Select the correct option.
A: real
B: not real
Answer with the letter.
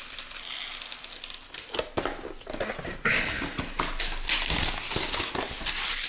A